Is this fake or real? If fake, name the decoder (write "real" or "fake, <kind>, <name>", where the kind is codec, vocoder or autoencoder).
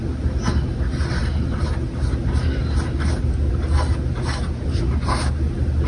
real